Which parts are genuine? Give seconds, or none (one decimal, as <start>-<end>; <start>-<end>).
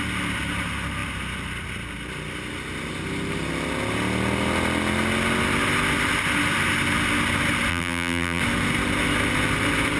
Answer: 0.0-7.7; 8.4-10.0